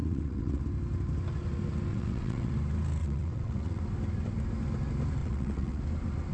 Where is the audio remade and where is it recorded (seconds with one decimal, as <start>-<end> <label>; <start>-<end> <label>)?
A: 0.0-0.6 remade; 0.6-1.9 recorded; 1.9-2.5 remade; 2.5-3.0 recorded; 3.0-3.8 remade; 3.8-5.2 recorded; 5.2-5.8 remade; 5.8-6.3 recorded